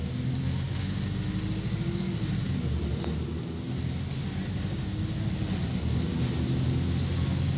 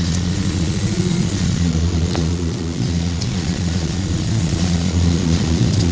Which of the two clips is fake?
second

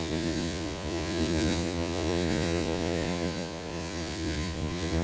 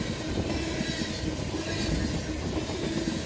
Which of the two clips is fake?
first